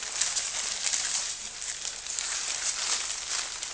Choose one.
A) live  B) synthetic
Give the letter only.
A